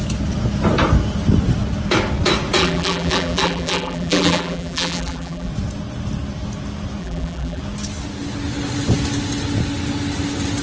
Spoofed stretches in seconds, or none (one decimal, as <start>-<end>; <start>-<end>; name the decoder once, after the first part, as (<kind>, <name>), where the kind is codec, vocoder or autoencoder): 2.6-5.5 (vocoder, BigVGAN v2); 7.0-7.6